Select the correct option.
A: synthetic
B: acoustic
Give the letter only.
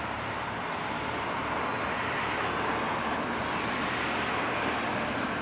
B